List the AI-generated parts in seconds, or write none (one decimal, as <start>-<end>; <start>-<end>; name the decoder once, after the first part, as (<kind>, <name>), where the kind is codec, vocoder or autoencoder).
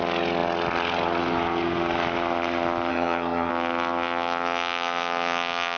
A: 2.9-3.5 (codec, SNAC)